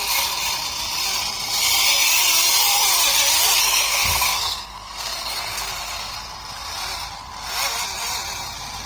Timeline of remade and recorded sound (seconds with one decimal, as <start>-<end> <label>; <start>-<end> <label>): 0.0-3.6 recorded; 3.6-5.7 remade; 5.7-8.9 recorded